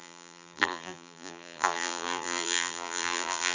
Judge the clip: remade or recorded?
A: remade